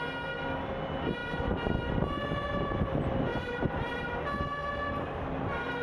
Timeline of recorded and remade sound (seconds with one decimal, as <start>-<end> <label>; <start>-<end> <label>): 0.0-3.3 recorded; 3.3-4.0 remade; 4.0-5.8 recorded